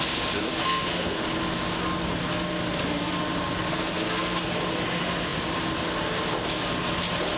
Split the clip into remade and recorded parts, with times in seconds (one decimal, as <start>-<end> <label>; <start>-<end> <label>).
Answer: 0.0-0.6 recorded; 0.6-1.2 remade; 1.2-3.7 recorded; 3.7-4.5 remade; 4.5-7.4 recorded